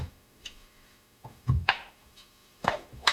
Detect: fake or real fake